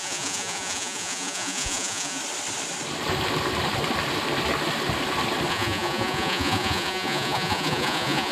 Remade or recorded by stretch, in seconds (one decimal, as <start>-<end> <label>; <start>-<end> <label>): 0.0-2.2 remade; 2.2-5.5 recorded; 5.5-8.3 remade